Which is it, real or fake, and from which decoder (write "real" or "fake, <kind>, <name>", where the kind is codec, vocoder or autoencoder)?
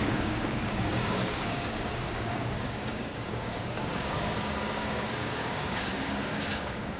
fake, codec, DAC